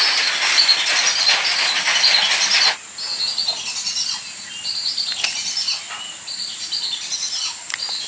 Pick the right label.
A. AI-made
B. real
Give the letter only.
B